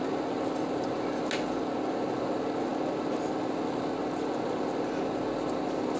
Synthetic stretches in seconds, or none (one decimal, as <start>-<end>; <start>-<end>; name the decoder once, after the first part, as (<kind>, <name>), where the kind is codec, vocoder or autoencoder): none